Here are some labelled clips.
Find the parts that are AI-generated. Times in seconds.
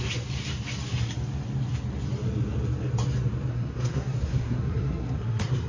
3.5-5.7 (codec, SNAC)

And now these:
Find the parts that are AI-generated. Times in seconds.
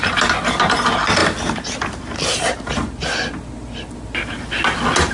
none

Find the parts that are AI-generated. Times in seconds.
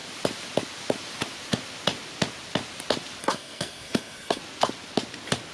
3.2-4.4 (codec, SNAC)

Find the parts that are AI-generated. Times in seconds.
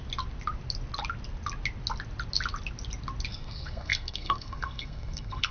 3.3-5.5 (codec, SNAC)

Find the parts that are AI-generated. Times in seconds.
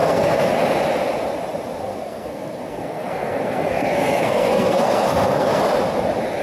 0.0-0.5 (codec, SNAC); 1.8-5.6